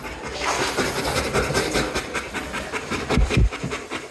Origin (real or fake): real